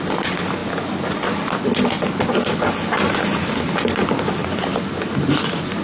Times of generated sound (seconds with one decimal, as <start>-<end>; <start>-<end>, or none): none